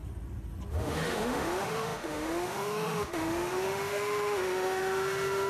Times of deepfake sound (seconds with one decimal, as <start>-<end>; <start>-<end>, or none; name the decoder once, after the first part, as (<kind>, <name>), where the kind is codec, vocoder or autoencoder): 0.7-5.5 (autoencoder, DAC-VAE)

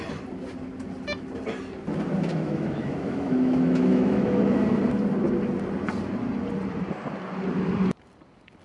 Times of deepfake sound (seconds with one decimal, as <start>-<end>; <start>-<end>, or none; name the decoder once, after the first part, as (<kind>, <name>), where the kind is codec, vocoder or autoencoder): 2.3-4.6 (autoencoder, DAC-VAE)

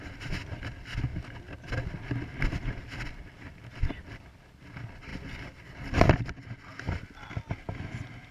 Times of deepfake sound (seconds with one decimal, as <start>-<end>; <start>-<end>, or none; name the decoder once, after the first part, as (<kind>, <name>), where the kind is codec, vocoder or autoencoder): none